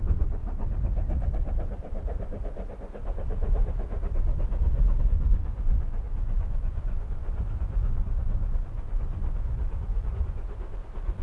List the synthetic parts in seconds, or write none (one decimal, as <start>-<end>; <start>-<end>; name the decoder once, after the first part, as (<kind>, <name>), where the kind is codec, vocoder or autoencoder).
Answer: 0.0-0.4 (vocoder, Vocos); 5.0-11.2